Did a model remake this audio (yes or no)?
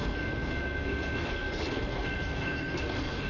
yes